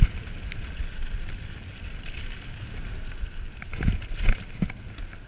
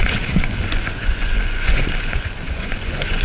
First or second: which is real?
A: first